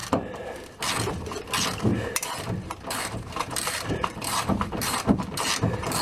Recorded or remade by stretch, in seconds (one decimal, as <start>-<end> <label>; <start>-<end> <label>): 0.0-1.9 recorded; 1.9-5.5 remade; 5.5-6.0 recorded